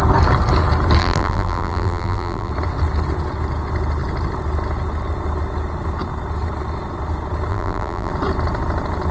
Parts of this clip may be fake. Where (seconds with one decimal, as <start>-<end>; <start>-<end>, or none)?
1.0-2.5; 7.5-8.1